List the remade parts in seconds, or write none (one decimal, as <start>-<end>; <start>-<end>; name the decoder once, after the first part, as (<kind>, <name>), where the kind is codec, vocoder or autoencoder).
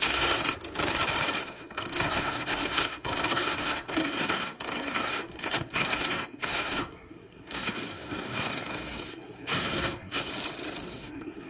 0.0-0.4 (codec, SNAC); 1.4-10.3; 10.9-11.5